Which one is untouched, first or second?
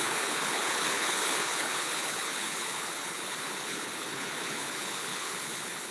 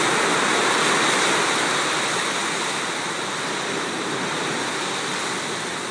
second